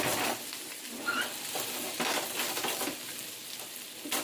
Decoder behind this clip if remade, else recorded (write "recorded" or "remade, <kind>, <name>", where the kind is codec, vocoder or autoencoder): recorded